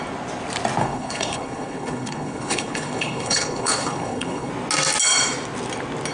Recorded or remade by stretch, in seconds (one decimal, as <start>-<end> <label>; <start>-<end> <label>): 0.0-0.8 recorded; 0.8-4.5 remade; 4.5-6.1 recorded